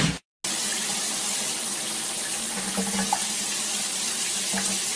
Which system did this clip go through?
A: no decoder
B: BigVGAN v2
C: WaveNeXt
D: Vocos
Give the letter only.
A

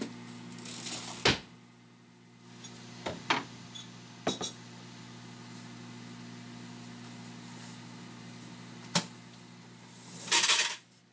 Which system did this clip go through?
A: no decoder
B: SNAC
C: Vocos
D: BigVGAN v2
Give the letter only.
A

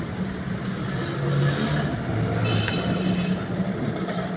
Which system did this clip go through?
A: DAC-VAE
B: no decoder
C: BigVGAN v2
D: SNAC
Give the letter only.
B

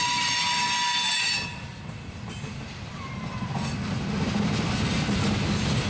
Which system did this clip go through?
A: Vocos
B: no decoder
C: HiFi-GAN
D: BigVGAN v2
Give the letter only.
B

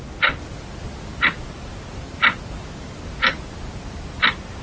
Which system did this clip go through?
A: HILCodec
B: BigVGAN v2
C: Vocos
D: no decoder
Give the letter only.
D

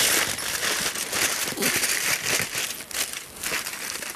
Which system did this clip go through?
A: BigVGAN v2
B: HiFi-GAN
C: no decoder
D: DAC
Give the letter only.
C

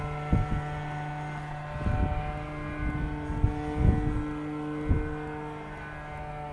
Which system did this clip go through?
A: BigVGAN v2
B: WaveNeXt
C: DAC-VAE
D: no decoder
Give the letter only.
D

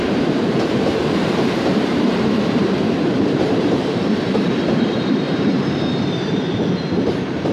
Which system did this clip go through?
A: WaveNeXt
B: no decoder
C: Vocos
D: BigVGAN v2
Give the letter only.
D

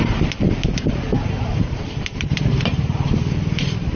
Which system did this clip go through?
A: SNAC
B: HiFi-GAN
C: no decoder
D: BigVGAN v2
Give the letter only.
D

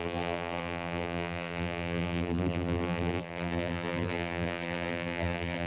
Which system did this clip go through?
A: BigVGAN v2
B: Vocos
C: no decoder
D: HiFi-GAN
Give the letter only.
A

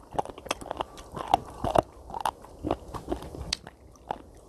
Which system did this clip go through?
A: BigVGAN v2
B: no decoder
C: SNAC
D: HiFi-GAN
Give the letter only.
A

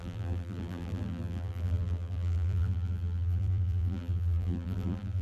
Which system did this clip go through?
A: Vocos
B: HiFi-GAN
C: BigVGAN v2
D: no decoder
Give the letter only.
C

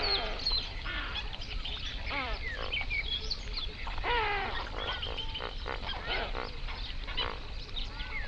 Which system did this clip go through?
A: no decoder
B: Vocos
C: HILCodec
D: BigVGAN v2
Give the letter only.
D